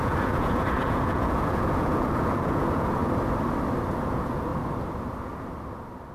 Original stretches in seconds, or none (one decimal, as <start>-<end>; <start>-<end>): 3.0-3.9; 4.5-6.1